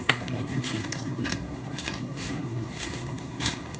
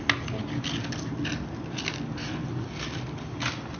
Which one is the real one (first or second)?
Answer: second